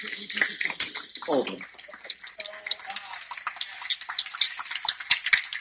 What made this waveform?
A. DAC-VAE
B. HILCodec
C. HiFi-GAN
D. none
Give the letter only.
D